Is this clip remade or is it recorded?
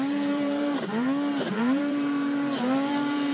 remade